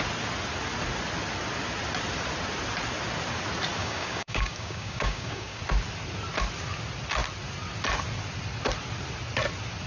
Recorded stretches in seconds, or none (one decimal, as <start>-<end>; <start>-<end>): 0.0-3.8; 5.6-9.9